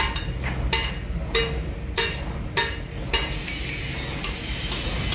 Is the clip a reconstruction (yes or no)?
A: no